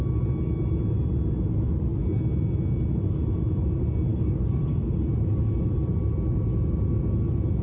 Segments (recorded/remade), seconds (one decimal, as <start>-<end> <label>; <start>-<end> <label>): 0.0-4.1 recorded; 4.1-5.0 remade; 5.0-7.6 recorded